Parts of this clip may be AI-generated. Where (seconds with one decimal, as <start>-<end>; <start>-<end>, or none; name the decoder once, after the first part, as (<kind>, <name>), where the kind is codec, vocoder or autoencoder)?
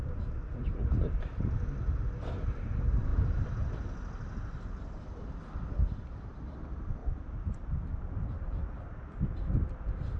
none